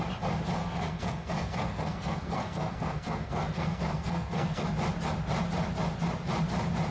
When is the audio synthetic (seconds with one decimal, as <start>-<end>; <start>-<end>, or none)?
0.6-4.7